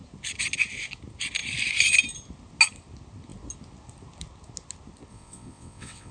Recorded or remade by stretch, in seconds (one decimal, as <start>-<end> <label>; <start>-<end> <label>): 0.0-5.1 recorded; 5.1-6.1 remade